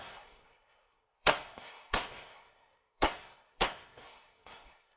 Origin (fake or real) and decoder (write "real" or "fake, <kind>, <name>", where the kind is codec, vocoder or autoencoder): fake, codec, SNAC